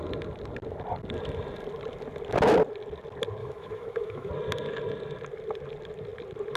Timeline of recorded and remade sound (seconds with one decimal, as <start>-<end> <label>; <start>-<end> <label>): 0.0-3.4 recorded; 3.4-4.3 remade; 4.3-6.6 recorded